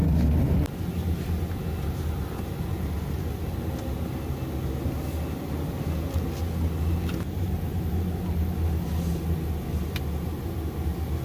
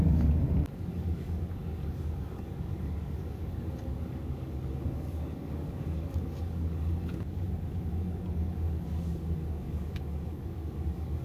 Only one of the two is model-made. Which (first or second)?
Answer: second